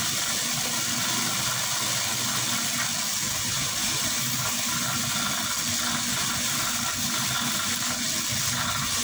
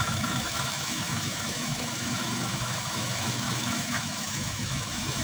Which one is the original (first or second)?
first